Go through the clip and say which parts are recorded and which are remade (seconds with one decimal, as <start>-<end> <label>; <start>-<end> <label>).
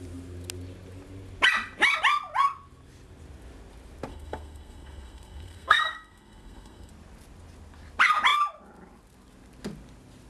0.0-4.1 recorded; 4.1-6.9 remade; 6.9-10.3 recorded